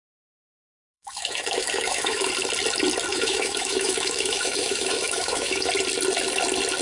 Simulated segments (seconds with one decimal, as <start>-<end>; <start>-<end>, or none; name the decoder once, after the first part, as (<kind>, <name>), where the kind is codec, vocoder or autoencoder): 0.0-2.3 (autoencoder, DAC-VAE); 3.1-5.7